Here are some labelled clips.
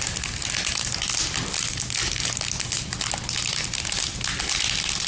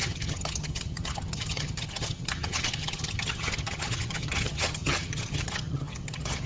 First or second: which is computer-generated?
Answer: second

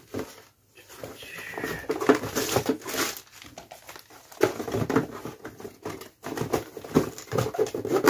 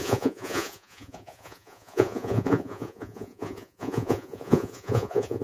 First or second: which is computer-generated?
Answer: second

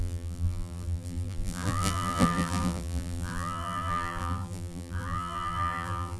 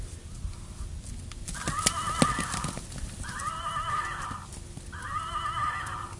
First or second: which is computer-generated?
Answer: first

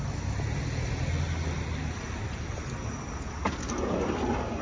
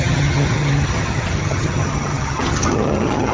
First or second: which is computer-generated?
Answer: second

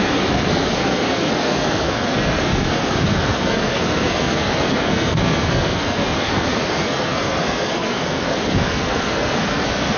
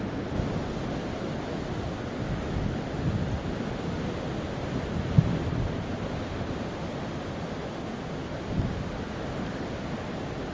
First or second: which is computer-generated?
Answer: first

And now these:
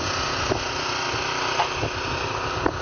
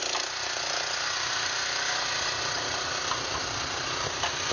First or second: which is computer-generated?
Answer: first